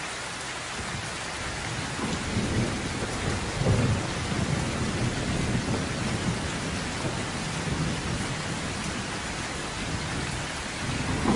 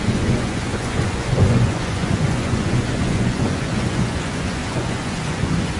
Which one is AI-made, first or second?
second